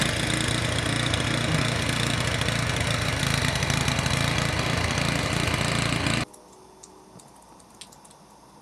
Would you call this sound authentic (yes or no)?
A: yes